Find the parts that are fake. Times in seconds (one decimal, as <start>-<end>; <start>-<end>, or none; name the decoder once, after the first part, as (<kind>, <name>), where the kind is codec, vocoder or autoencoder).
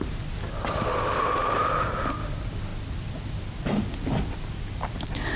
none